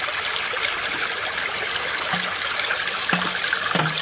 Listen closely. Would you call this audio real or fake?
real